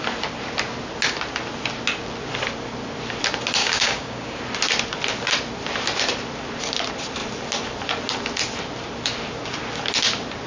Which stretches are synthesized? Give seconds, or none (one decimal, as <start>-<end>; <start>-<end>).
3.6-4.4